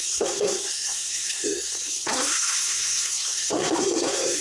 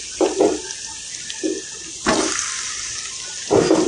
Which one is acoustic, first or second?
second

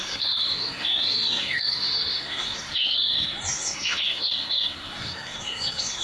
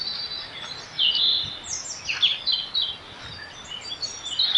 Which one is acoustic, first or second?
second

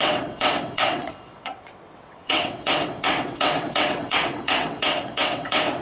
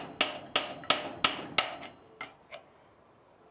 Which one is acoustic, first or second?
second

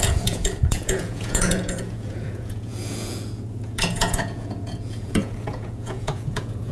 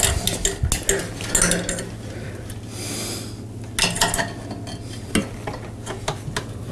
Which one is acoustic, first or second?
second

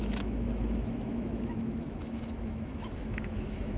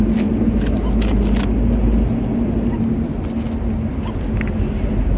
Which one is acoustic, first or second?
second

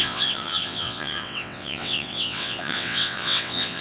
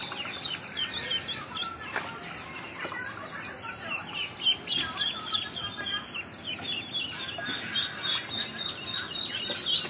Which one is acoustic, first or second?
second